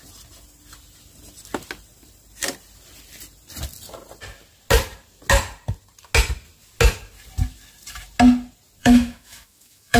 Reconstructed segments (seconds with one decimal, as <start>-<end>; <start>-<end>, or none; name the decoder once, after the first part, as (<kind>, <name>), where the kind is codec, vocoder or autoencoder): 8.8-10.0 (autoencoder, DAC-VAE)